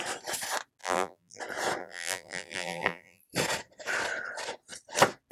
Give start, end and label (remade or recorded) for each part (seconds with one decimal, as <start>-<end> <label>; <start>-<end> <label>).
0.0-0.8 recorded; 0.8-1.4 remade; 1.4-1.8 recorded; 1.8-3.2 remade; 3.2-5.3 recorded